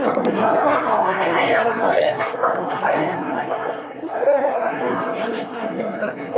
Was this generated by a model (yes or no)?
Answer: yes